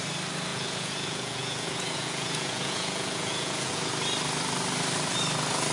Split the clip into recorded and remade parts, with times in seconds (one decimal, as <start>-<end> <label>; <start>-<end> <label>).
0.0-0.5 recorded; 0.5-3.9 remade; 3.9-5.7 recorded